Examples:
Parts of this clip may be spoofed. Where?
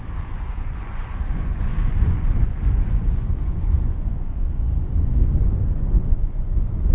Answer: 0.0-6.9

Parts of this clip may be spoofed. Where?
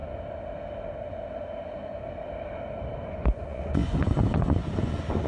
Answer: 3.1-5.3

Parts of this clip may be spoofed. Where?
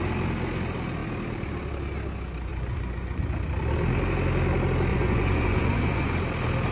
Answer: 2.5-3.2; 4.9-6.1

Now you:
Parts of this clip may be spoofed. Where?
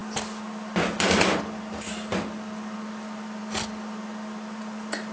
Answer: none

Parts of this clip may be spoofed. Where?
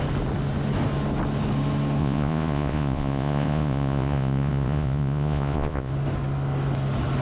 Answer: 2.0-5.9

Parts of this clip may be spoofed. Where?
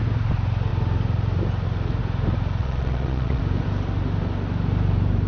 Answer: 2.6-3.4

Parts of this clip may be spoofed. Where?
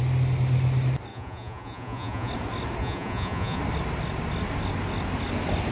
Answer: 1.1-2.3; 2.8-3.6